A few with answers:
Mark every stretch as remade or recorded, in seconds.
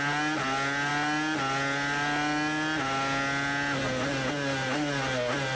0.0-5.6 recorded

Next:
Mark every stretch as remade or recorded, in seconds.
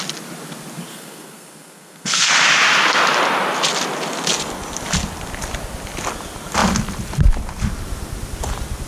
0.0-0.9 recorded; 0.9-2.3 remade; 2.3-8.9 recorded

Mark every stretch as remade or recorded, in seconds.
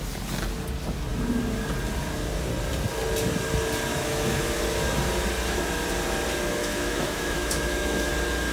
0.0-3.9 recorded; 3.9-4.6 remade; 4.6-6.6 recorded; 6.6-8.1 remade; 8.1-8.5 recorded